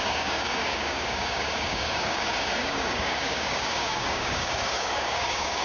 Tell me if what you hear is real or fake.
fake